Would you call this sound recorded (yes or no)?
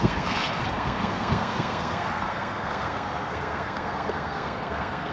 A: no